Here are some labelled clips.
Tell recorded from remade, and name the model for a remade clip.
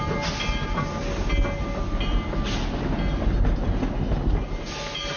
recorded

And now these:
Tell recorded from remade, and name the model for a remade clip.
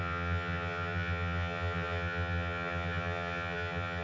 remade, vocoder, HiFi-GAN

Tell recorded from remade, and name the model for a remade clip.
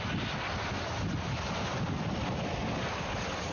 recorded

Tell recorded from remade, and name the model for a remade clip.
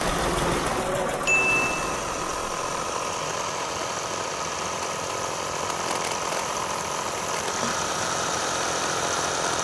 recorded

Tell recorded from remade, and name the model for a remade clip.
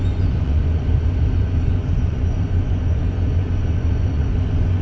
remade, vocoder, Vocos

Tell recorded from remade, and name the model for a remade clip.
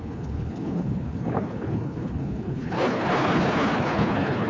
remade, codec, HILCodec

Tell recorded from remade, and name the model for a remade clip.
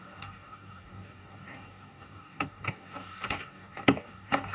remade, codec, DAC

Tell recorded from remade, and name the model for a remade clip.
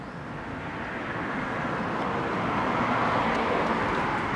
recorded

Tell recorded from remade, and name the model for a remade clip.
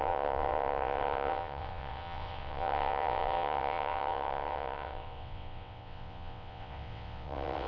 remade, vocoder, WaveNeXt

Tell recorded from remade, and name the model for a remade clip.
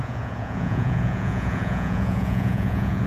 remade, vocoder, Vocos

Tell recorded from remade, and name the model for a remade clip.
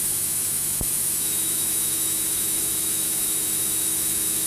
remade, autoencoder, DAC-VAE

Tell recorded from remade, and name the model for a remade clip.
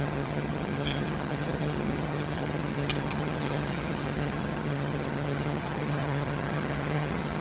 remade, vocoder, HiFi-GAN